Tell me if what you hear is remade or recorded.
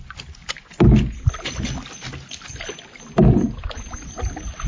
recorded